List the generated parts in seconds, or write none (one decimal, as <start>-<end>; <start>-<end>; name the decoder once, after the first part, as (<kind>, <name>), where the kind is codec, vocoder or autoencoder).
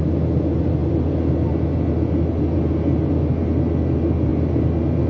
none